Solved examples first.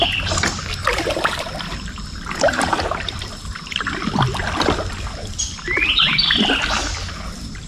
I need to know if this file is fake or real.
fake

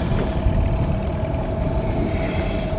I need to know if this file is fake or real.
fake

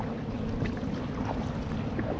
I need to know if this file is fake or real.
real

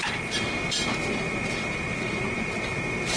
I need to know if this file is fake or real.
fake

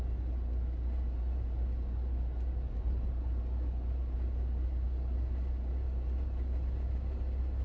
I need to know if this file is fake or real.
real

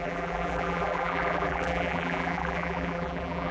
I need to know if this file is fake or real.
fake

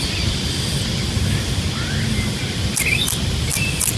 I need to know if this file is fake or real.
real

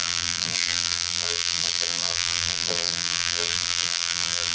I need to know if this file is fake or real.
fake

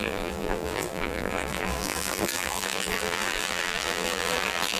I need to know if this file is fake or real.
fake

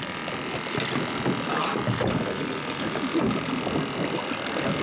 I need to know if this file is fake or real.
real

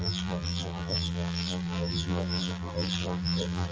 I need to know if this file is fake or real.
fake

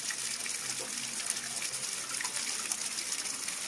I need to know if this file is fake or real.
real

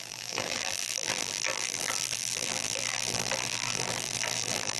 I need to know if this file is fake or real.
fake